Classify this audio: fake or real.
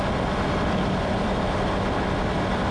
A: real